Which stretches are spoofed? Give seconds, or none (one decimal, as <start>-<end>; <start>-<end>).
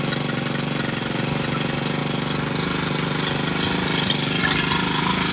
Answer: none